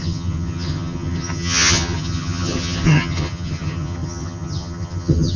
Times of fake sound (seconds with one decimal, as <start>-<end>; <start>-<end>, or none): 0.0-5.4

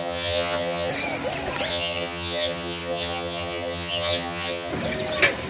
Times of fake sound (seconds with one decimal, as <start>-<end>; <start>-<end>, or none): 0.0-0.9; 1.7-4.7

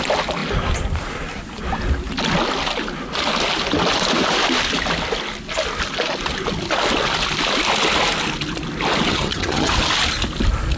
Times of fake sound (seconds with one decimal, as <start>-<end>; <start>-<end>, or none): 9.1-9.7

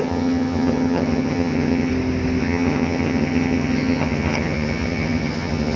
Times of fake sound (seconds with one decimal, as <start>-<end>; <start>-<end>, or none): 0.0-1.9; 2.4-5.8

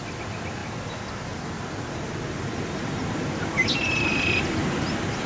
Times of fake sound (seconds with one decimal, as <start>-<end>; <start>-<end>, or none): none

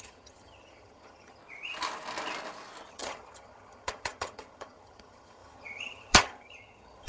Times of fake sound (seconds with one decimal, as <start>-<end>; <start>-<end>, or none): 0.0-1.4; 2.9-7.1

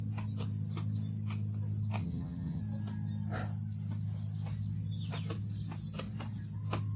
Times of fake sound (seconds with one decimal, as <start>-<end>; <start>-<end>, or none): 2.0-2.6

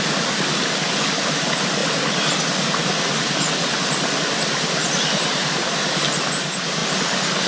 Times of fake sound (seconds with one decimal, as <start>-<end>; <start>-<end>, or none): none